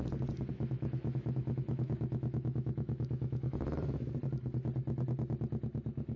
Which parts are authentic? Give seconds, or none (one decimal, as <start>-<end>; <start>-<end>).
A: 0.0-0.5; 4.1-6.2